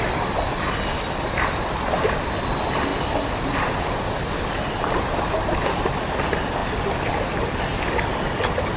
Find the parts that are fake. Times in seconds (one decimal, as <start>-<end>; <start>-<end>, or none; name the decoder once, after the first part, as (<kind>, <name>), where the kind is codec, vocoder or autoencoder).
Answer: none